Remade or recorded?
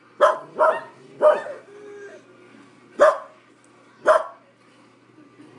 recorded